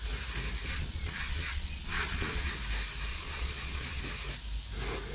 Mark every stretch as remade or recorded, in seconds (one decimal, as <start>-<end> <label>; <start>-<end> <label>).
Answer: 0.0-0.7 recorded; 0.7-2.5 remade; 2.5-3.1 recorded; 3.1-4.0 remade; 4.0-5.1 recorded